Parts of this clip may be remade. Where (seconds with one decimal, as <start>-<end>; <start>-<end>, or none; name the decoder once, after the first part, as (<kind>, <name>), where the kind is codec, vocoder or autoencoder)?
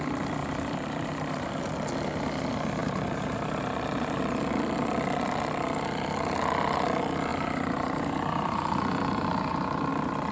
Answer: 0.4-1.5 (vocoder, BigVGAN v2); 2.8-4.2; 7.3-9.9